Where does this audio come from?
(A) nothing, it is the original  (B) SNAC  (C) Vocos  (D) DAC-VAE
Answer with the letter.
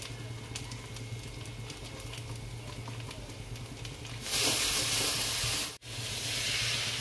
A